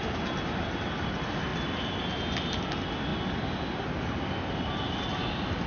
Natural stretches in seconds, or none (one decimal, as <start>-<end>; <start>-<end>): 0.0-5.7

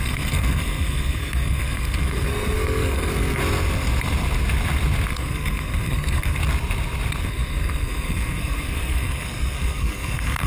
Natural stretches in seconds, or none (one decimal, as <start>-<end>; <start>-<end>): 3.4-5.1; 6.4-7.2